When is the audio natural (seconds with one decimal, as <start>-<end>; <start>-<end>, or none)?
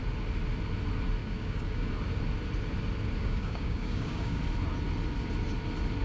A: 0.0-1.2; 1.9-3.2; 4.4-6.0